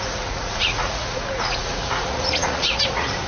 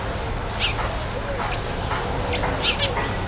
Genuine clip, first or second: second